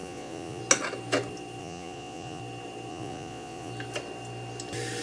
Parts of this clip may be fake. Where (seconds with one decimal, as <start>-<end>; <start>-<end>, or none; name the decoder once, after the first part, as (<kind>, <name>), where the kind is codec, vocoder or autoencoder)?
0.0-0.6 (vocoder, Vocos); 1.6-2.4; 2.9-3.7